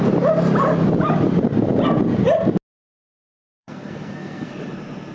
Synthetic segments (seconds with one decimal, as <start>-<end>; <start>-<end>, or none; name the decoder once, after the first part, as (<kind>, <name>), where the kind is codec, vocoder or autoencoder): 3.6-4.5 (codec, SNAC)